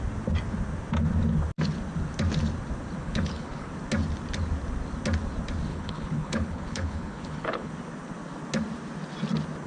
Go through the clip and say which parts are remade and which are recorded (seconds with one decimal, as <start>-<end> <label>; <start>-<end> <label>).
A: 0.0-3.0 recorded; 3.0-3.7 remade; 3.7-5.7 recorded; 5.7-7.7 remade; 7.7-9.7 recorded